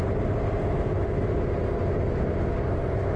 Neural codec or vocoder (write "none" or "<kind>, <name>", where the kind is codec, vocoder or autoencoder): none